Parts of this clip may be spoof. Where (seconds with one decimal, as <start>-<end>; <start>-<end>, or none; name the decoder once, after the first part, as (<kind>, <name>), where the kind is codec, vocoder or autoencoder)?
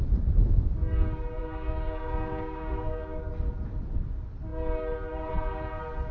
1.4-3.3 (codec, DAC)